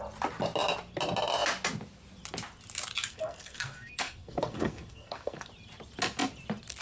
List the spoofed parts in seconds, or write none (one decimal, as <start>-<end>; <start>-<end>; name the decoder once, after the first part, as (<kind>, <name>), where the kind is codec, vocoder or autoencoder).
3.1-5.5 (codec, SNAC)